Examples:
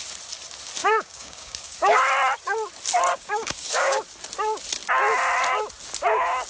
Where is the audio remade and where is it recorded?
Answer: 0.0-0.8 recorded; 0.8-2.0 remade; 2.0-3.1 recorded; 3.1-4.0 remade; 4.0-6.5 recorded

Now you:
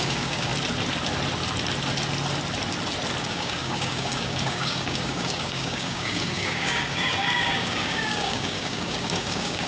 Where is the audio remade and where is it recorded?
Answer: 0.0-0.5 remade; 0.5-3.2 recorded; 3.2-9.7 remade

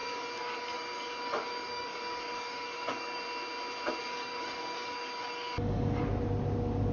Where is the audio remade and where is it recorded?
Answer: 0.0-3.2 remade; 3.2-4.0 recorded; 4.0-6.0 remade; 6.0-6.9 recorded

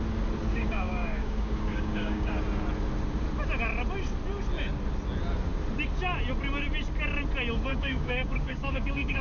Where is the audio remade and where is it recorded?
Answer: 0.0-0.5 recorded; 0.5-2.3 remade; 2.3-7.7 recorded; 7.7-9.2 remade